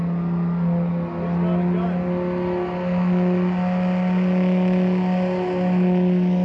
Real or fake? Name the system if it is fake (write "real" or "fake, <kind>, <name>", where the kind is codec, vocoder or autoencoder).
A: real